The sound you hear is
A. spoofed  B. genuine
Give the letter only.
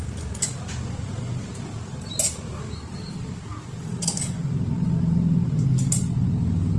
B